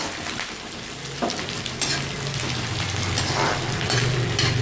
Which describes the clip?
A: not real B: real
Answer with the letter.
B